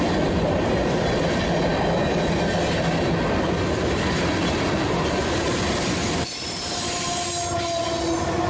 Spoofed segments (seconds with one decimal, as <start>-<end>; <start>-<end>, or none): none